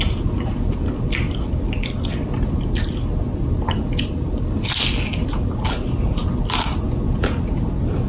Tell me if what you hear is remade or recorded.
recorded